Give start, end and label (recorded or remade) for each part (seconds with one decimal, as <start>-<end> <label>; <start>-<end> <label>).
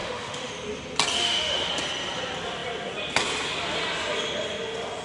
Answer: 0.0-0.5 remade; 0.5-1.2 recorded; 1.2-1.7 remade; 1.7-5.0 recorded